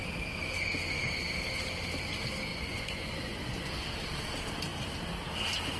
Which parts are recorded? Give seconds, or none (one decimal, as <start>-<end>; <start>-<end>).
0.0-2.5; 3.7-5.8